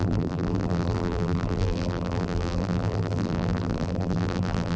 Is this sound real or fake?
fake